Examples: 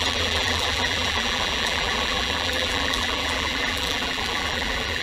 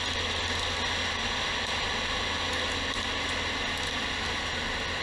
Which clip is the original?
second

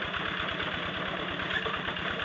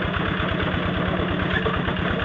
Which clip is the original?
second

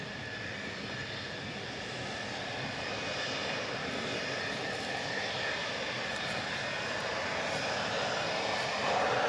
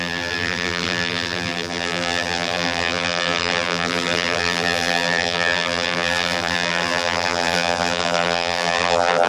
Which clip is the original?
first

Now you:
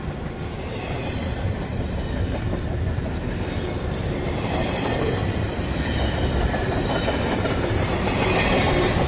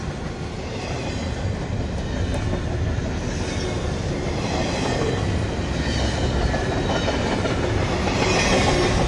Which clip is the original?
second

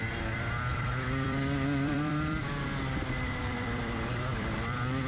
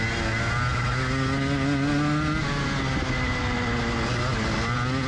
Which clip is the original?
second